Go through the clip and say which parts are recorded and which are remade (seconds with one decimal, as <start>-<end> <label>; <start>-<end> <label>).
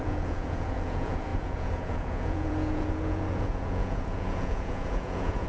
0.0-5.5 remade